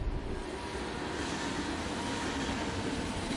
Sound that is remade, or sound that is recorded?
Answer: recorded